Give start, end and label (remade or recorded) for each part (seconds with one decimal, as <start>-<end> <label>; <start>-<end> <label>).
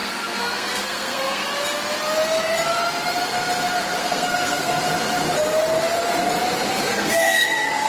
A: 0.0-1.5 remade; 1.5-4.0 recorded; 4.0-4.8 remade; 4.8-6.9 recorded; 6.9-7.9 remade